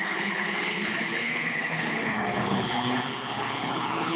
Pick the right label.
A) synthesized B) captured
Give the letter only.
A